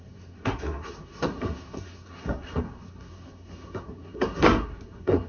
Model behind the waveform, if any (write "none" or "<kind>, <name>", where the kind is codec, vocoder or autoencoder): codec, SNAC